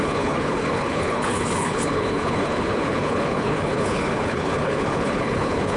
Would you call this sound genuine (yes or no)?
no